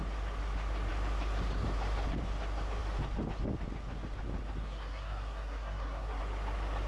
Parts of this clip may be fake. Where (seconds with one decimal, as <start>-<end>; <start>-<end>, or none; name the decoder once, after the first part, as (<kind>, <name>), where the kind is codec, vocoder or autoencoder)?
4.6-6.2 (codec, SNAC)